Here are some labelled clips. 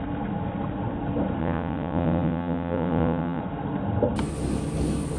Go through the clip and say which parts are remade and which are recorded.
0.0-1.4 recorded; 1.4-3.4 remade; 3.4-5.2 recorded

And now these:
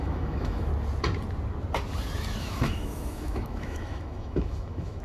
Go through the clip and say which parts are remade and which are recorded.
0.0-0.7 remade; 0.7-2.4 recorded; 2.4-5.0 remade

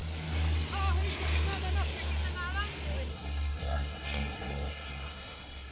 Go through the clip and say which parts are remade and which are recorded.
0.0-3.1 recorded; 3.1-5.7 remade

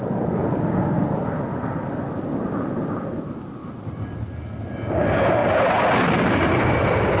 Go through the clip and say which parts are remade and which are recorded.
0.0-5.4 recorded; 5.4-5.9 remade; 5.9-7.2 recorded